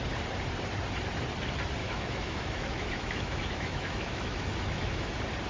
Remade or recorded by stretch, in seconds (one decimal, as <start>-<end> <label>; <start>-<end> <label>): 0.0-1.8 recorded; 1.8-5.1 remade; 5.1-5.5 recorded

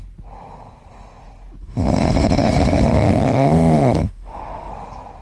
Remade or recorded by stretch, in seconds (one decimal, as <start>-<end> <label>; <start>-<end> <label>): 0.0-1.6 recorded; 1.6-4.7 remade; 4.7-5.2 recorded

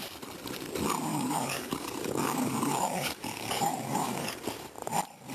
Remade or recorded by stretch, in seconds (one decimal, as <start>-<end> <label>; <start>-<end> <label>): 0.0-1.1 recorded; 1.1-4.3 remade; 4.3-5.3 recorded